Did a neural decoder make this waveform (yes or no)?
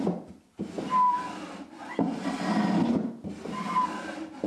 no